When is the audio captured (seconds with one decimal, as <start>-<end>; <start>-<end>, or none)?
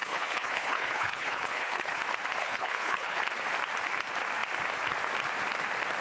2.0-2.4; 3.2-6.0